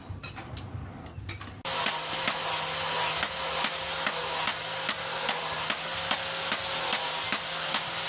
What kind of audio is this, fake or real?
real